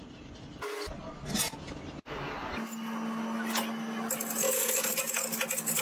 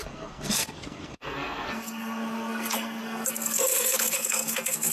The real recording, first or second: first